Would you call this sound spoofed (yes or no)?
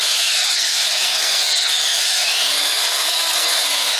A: yes